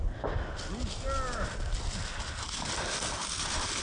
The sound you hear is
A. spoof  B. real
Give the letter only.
B